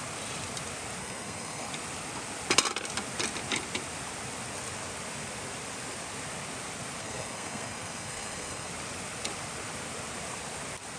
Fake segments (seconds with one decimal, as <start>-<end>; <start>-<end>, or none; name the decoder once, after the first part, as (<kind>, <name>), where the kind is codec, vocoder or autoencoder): 1.0-1.7 (codec, SNAC); 7.0-8.7